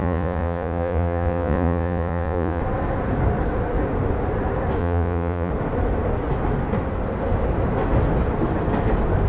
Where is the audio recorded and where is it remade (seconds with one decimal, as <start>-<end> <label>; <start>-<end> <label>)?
0.0-2.6 remade; 2.6-4.8 recorded; 4.8-5.5 remade; 5.5-9.3 recorded